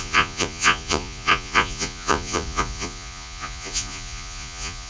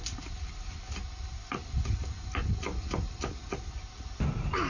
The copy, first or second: first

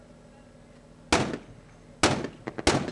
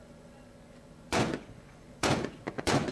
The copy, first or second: second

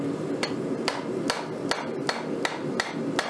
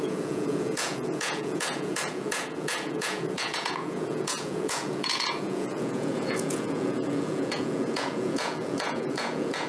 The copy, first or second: second